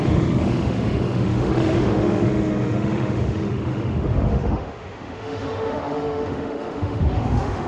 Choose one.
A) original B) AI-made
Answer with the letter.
B